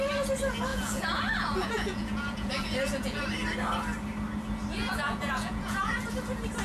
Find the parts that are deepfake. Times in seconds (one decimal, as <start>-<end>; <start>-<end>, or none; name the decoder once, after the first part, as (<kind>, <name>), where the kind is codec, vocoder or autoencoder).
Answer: 0.7-3.2 (vocoder, Vocos); 4.8-5.9